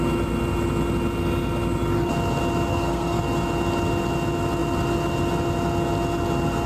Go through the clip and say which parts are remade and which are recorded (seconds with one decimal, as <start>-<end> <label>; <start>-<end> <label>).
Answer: 0.0-2.7 recorded; 2.7-3.2 remade; 3.2-6.7 recorded

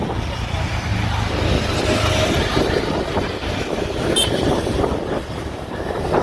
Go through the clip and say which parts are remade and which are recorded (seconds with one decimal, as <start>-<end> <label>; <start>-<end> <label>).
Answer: 0.0-4.2 recorded; 4.2-4.9 remade; 4.9-6.2 recorded